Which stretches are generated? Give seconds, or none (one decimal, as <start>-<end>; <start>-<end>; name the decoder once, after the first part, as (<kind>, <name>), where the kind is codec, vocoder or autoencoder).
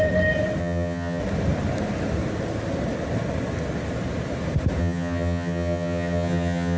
0.6-1.2 (vocoder, HiFi-GAN); 4.8-6.8